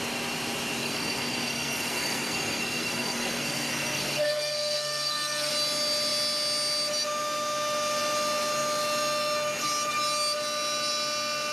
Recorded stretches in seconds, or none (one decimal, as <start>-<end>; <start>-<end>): 0.0-0.8; 5.5-11.5